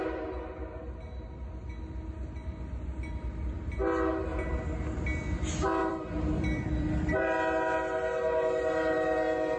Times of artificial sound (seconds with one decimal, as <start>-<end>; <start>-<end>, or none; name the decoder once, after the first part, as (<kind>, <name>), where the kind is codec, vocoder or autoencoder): 5.8-6.9 (vocoder, BigVGAN v2)